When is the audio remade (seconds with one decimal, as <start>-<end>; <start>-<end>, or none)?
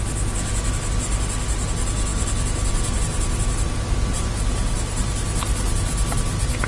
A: none